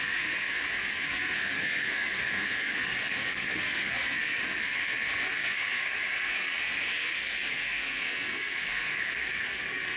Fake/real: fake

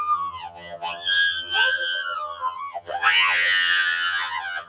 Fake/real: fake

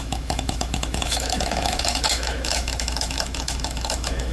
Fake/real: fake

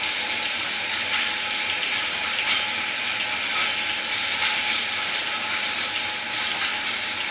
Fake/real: real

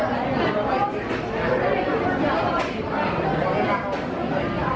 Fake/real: real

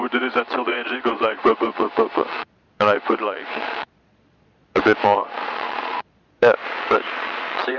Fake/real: fake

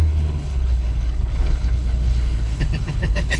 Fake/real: fake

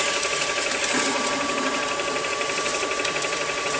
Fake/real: fake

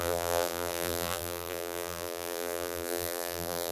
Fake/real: fake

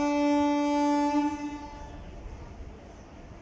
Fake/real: real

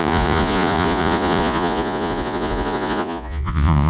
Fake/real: fake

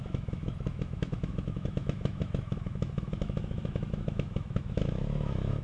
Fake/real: fake